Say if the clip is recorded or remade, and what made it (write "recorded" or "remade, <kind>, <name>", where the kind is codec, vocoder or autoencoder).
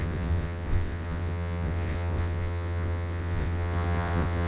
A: remade, vocoder, WaveNeXt